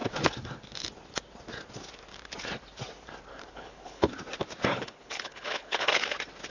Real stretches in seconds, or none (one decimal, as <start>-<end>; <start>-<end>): 0.0-3.3; 4.1-4.7; 6.0-6.5